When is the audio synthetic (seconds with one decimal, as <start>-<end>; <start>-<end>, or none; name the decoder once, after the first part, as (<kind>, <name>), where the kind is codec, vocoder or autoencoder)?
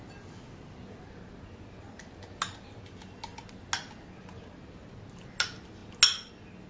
none